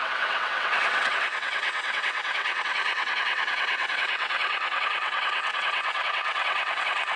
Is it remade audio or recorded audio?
remade